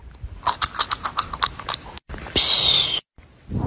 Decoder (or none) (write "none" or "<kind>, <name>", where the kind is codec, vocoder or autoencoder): none